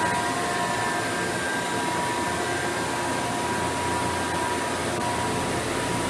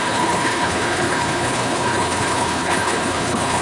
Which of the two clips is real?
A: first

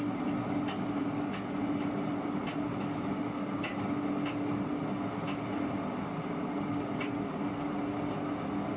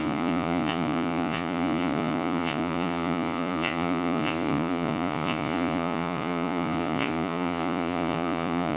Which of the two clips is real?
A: first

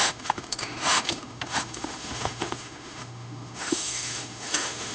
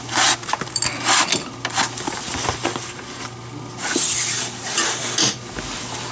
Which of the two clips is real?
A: second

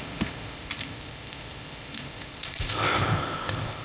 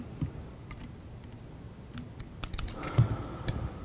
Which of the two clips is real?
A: second